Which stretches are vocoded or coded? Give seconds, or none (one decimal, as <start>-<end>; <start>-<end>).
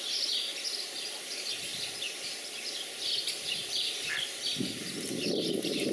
1.7-2.5